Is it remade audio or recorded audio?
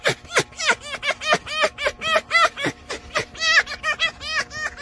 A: recorded